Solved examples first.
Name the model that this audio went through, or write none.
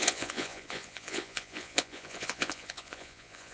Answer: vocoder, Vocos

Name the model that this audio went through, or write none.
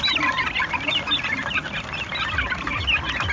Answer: none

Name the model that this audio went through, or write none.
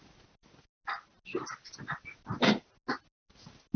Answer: none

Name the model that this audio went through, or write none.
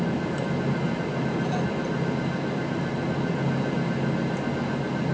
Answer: none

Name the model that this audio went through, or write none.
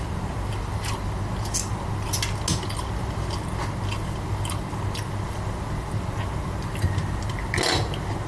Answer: none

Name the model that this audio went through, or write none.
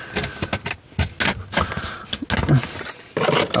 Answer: none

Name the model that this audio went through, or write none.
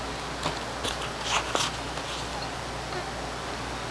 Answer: none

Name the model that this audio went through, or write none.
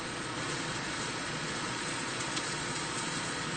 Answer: vocoder, Vocos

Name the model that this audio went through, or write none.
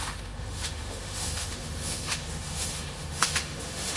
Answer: autoencoder, DAC-VAE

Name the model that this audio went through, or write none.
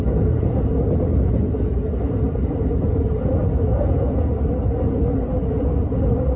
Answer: none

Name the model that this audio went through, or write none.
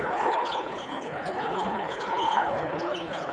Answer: codec, HILCodec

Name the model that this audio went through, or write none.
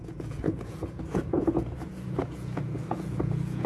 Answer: vocoder, Vocos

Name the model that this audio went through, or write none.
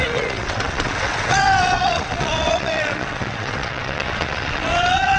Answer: vocoder, WaveNeXt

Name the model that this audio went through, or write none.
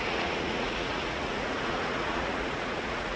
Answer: vocoder, Vocos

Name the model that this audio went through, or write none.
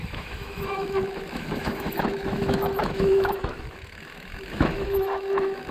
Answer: autoencoder, DAC-VAE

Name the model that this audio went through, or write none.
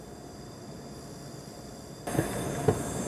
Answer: none